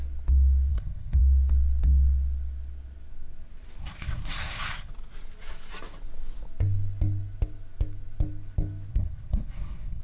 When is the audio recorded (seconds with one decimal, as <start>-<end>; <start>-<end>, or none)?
0.0-0.7; 1.2-3.8; 4.9-8.9

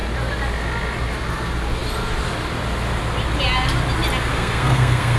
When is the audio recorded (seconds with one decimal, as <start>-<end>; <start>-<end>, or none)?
0.0-4.3

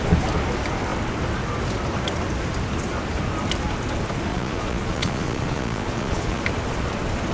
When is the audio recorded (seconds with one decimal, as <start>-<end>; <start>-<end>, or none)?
0.0-4.3; 6.4-7.3